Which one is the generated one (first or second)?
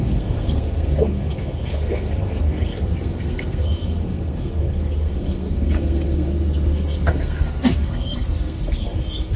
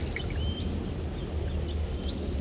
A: first